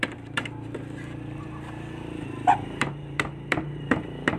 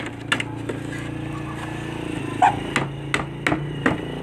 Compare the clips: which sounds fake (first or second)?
first